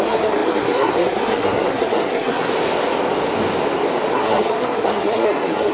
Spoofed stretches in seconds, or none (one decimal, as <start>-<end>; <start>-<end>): 0.0-2.5; 4.1-5.7